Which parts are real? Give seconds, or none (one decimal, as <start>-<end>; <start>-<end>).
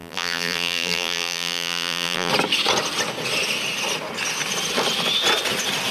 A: 2.3-5.9